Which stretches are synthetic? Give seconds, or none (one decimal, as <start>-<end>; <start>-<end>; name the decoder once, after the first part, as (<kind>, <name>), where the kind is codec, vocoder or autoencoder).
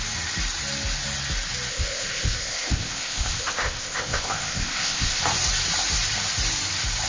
1.7-5.2 (codec, ZipCodec)